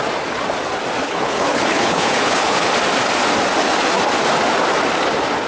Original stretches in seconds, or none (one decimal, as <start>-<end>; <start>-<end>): 0.0-1.0; 2.7-5.5